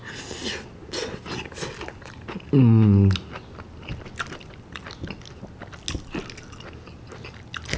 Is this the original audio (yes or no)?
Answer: yes